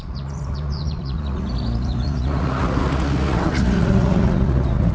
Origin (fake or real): fake